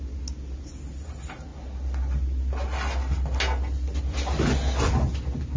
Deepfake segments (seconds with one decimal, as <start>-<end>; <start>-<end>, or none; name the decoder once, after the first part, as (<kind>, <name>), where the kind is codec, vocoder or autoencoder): none